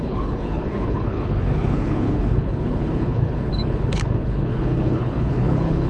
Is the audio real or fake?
fake